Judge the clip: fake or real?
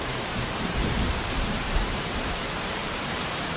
fake